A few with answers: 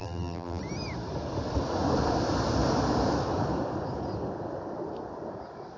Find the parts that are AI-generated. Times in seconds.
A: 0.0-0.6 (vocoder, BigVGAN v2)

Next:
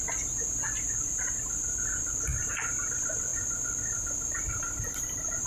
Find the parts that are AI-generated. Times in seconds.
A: none

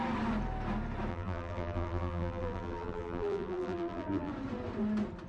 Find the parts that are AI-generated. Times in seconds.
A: 1.1-4.3 (vocoder, BigVGAN v2)

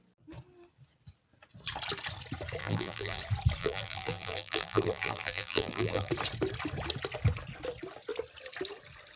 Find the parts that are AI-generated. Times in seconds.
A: 2.6-3.2 (vocoder, BigVGAN v2); 3.6-6.1

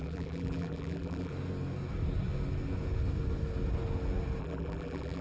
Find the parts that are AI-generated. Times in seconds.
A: 0.0-1.3 (vocoder, BigVGAN v2); 4.4-5.2

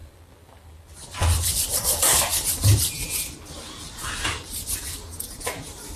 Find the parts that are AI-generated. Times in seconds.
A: 0.0-2.2 (vocoder, BigVGAN v2); 4.0-5.2

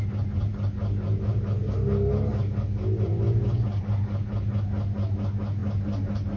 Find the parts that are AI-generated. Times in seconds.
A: none

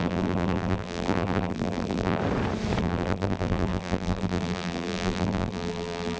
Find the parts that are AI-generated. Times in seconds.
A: 0.0-2.2 (vocoder, BigVGAN v2); 2.8-6.2